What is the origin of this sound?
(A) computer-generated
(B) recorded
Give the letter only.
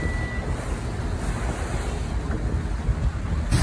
B